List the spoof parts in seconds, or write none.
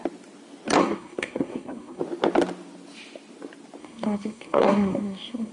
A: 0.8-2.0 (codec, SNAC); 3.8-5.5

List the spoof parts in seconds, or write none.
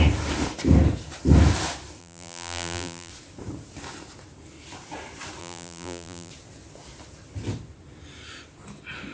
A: 2.0-3.1 (vocoder, BigVGAN v2); 5.4-6.3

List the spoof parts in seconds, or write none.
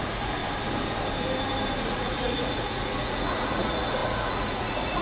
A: 0.0-0.4 (vocoder, Vocos); 1.8-5.0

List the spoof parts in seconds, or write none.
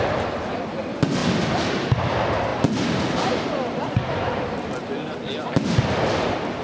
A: none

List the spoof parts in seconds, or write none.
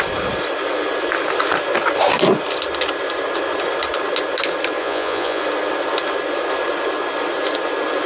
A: 4.8-5.4 (vocoder, Vocos)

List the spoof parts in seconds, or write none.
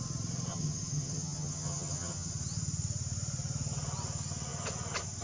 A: 0.5-2.3 (vocoder, HiFi-GAN)